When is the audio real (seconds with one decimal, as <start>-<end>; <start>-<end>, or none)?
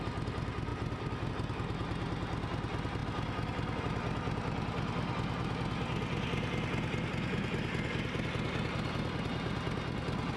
0.0-10.4